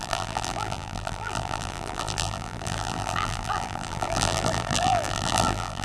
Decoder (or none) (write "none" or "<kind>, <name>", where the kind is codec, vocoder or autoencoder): vocoder, BigVGAN v2